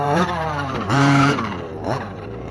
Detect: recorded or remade remade